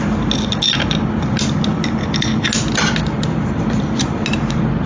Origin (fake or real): real